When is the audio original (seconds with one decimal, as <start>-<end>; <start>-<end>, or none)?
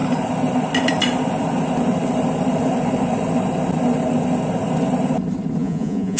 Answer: 0.0-5.6